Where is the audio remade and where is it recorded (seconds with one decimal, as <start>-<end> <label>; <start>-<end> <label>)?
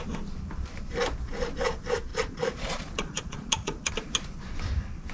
0.0-2.1 recorded; 2.1-3.9 remade; 3.9-5.1 recorded